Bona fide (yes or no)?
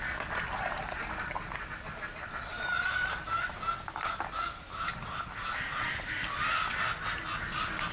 yes